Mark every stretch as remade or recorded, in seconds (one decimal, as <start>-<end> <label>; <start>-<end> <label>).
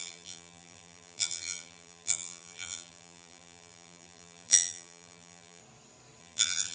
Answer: 0.0-5.6 remade; 5.6-6.2 recorded; 6.2-6.7 remade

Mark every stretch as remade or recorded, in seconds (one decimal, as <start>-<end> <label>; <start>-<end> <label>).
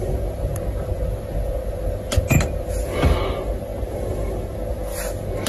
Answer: 0.0-5.5 recorded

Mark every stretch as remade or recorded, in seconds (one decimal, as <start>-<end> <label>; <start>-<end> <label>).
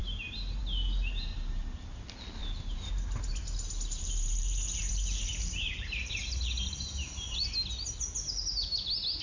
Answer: 0.0-2.4 recorded; 2.4-2.9 remade; 2.9-3.3 recorded; 3.3-7.4 remade; 7.4-9.2 recorded